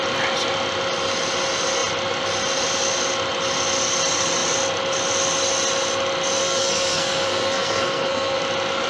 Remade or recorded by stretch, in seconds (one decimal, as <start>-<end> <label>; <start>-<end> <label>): 0.0-6.4 recorded; 6.4-8.4 remade; 8.4-8.9 recorded

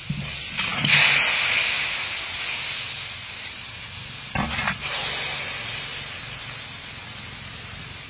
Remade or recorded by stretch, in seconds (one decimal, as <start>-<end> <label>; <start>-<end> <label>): 0.0-8.1 recorded

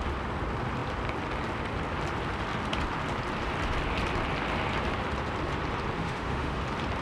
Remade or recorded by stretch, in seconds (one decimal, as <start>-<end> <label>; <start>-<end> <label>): 0.0-6.0 recorded; 6.0-6.6 remade; 6.6-7.0 recorded

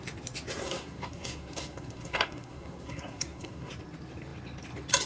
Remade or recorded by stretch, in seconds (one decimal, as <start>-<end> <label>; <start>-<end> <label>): 0.0-0.6 recorded; 0.6-3.7 remade; 3.7-5.1 recorded

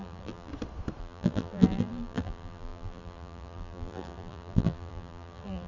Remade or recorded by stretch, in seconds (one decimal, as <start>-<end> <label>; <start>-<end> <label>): 0.0-0.5 remade; 0.5-1.0 recorded; 1.0-5.7 remade

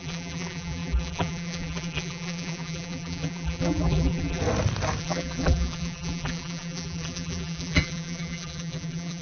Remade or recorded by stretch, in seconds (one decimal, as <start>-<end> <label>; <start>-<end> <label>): 0.0-4.4 remade; 4.4-5.0 recorded; 5.0-9.2 remade

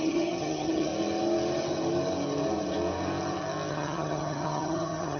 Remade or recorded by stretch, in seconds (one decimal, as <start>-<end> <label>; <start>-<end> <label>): 0.0-0.9 remade; 0.9-3.7 recorded; 3.7-5.2 remade

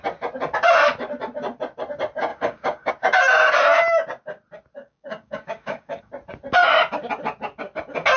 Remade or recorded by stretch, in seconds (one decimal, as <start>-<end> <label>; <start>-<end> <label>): 0.0-2.3 recorded; 2.3-2.9 remade; 2.9-4.8 recorded; 4.8-6.1 remade; 6.1-8.2 recorded